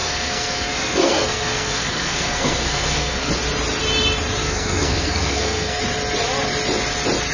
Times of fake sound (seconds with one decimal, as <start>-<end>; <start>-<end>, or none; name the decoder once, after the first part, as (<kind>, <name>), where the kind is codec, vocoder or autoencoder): 0.0-3.3 (codec, SNAC); 4.4-5.8